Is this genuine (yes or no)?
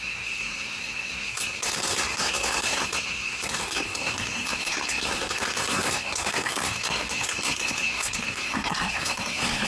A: no